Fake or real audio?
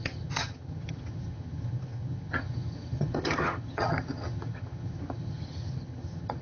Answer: fake